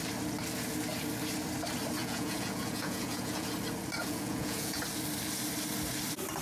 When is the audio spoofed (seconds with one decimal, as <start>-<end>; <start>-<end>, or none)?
2.0-3.5; 4.0-4.8